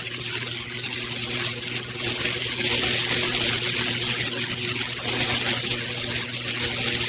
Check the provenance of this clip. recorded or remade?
recorded